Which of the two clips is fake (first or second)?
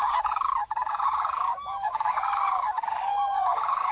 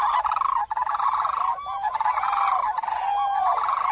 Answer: first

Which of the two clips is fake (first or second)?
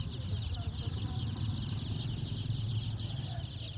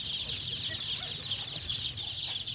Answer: first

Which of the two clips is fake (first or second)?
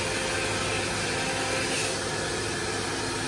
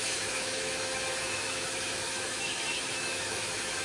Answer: second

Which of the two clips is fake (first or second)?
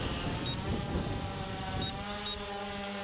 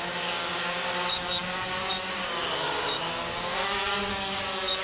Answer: second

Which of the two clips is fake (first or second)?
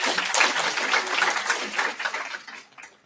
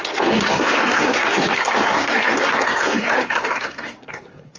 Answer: second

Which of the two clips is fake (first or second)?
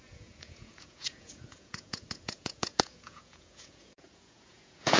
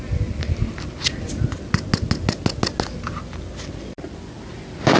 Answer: first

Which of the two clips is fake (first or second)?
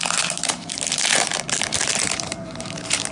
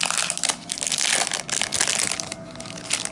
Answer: first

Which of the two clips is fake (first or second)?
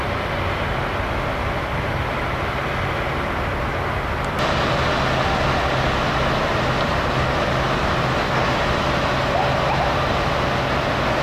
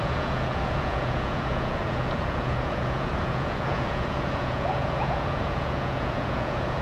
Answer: second